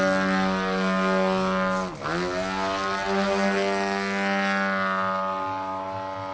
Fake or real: real